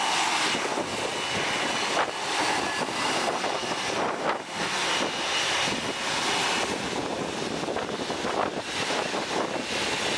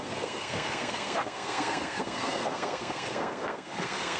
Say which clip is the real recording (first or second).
first